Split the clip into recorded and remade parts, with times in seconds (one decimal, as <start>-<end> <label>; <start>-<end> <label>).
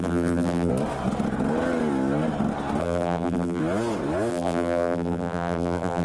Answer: 0.0-0.7 remade; 0.7-2.8 recorded; 2.8-3.6 remade; 3.6-4.3 recorded; 4.3-6.0 remade